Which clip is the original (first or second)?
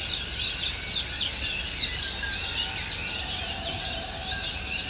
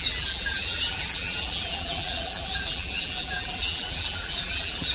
first